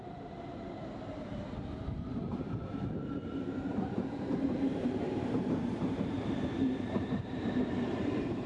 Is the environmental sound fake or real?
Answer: fake